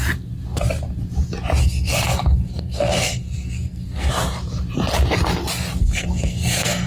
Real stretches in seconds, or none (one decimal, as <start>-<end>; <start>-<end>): 0.0-1.6; 4.1-5.8